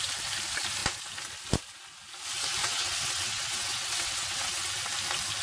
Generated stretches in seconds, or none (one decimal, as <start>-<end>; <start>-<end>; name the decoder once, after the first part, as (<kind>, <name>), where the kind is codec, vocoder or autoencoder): 2.6-4.7 (vocoder, WaveNeXt)

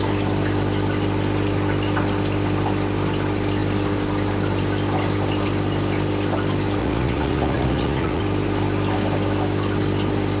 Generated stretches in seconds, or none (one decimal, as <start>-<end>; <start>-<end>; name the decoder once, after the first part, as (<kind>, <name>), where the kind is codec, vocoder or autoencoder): 6.8-8.2 (vocoder, Vocos)

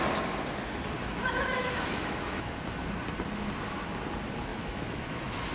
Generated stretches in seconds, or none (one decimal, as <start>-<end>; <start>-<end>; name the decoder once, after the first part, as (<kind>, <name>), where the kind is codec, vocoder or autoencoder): 1.0-2.5 (autoencoder, DAC-VAE); 4.5-5.5